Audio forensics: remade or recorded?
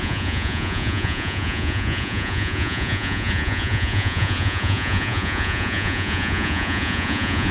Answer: remade